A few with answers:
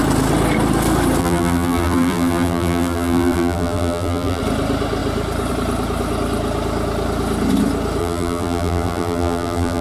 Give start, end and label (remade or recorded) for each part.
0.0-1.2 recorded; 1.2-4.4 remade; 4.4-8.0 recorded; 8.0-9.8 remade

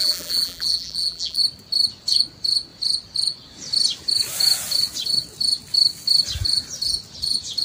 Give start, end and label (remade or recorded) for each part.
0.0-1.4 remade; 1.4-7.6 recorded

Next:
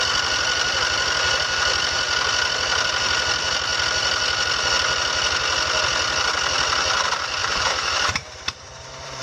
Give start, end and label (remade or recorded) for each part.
0.0-7.4 recorded; 7.4-9.2 remade

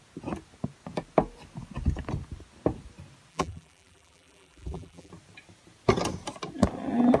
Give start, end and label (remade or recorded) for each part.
0.0-3.3 recorded; 3.3-5.1 remade; 5.1-7.2 recorded